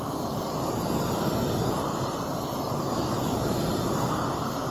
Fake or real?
real